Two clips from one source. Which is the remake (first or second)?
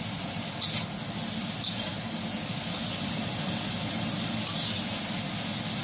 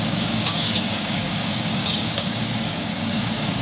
second